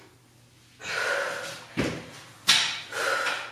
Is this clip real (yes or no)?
yes